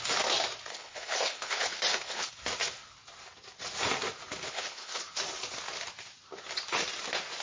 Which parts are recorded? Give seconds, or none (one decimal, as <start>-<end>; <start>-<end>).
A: 0.0-0.7; 2.3-4.5; 5.0-7.4